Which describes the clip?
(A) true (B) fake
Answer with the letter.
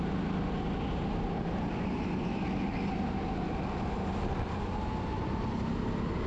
A